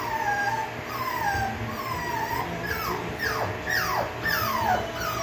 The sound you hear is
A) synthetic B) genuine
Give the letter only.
B